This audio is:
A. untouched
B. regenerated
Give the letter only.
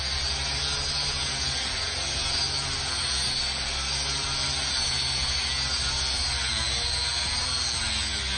A